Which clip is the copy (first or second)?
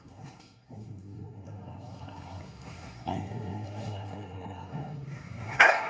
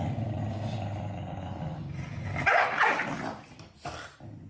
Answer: first